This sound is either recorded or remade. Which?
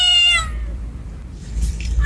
remade